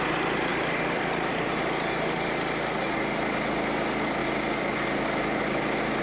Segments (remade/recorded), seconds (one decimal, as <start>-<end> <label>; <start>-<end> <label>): 0.0-0.5 recorded; 0.5-1.5 remade; 1.5-4.2 recorded; 4.2-5.4 remade; 5.4-6.0 recorded